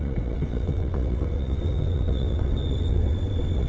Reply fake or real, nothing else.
fake